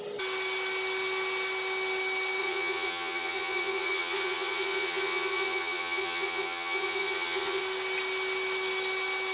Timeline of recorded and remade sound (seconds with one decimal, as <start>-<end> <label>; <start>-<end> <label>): 0.0-2.4 recorded; 2.4-7.6 remade; 7.6-9.3 recorded